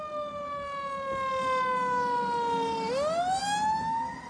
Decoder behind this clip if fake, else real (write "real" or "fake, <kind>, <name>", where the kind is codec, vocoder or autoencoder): real